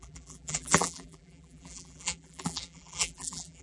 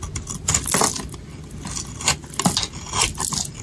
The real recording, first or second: second